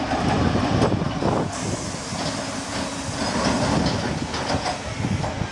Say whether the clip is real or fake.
real